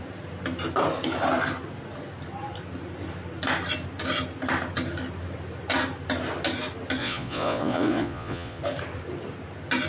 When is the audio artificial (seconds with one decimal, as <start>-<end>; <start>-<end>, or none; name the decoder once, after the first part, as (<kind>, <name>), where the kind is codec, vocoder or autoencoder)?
7.0-8.6 (vocoder, Vocos)